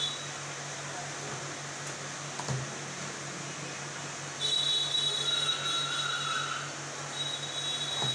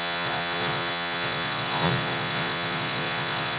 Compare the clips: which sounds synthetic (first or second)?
second